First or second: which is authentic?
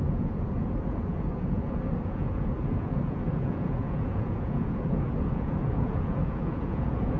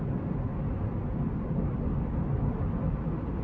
second